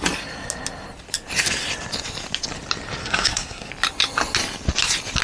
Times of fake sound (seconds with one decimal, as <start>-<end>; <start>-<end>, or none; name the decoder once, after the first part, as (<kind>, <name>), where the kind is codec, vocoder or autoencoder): 3.0-3.7 (codec, SNAC)